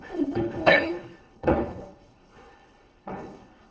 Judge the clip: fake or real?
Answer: fake